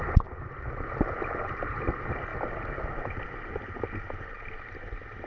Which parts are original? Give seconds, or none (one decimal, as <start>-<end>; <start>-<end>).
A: 0.0-5.3